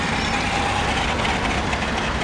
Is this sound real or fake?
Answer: real